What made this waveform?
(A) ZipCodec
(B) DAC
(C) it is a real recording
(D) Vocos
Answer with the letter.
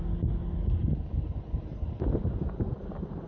C